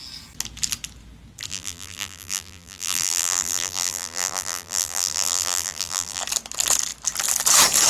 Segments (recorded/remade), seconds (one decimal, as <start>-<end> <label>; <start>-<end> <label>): 0.0-1.5 recorded; 1.5-6.2 remade; 6.2-7.9 recorded

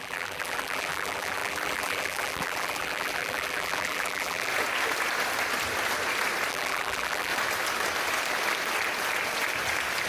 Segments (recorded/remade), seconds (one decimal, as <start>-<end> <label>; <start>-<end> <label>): 0.0-4.5 remade; 4.5-6.5 recorded; 6.5-7.3 remade; 7.3-10.1 recorded